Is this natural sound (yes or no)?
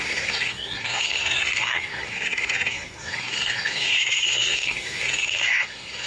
no